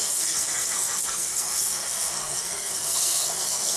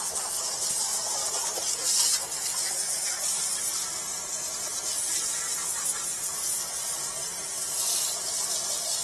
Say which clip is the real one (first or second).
second